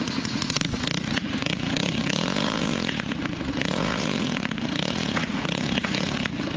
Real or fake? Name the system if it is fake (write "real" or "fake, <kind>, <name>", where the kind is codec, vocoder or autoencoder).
fake, vocoder, Vocos